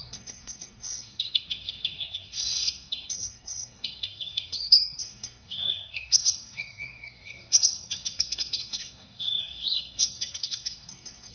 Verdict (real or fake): fake